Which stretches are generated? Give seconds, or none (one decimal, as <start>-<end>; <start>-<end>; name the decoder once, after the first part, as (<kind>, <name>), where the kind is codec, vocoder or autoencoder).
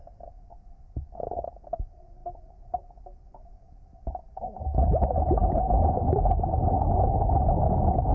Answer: 2.2-4.6 (vocoder, BigVGAN v2); 5.4-6.0